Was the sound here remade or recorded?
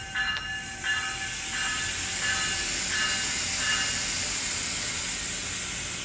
recorded